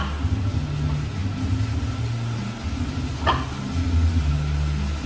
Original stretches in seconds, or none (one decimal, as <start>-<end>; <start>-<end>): 0.0-5.1